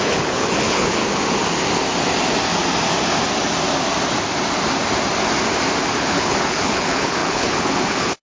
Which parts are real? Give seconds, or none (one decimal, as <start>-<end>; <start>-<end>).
1.0-5.9